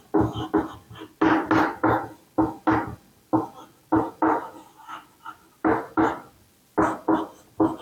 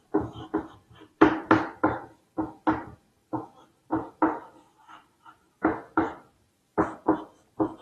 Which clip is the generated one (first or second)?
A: second